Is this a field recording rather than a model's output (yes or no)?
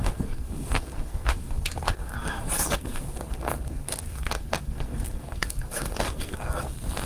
no